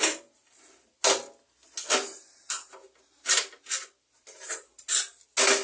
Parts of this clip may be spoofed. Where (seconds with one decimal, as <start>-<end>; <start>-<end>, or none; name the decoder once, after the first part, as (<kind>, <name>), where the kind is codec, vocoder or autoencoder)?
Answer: none